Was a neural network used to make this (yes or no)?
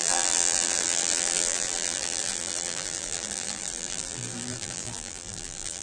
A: yes